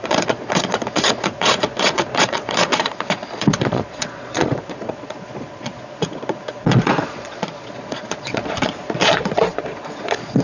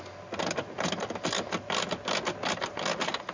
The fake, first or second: first